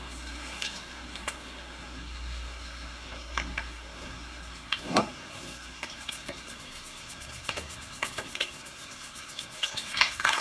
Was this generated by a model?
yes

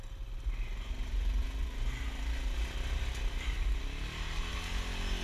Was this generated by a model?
no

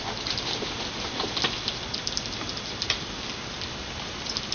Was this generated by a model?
no